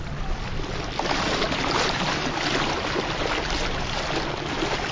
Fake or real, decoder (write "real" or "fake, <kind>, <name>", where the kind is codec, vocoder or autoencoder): fake, vocoder, BigVGAN v2